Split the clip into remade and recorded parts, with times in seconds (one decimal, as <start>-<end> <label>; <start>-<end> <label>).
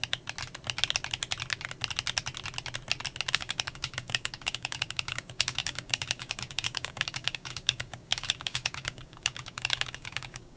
0.0-3.3 recorded; 3.3-10.6 remade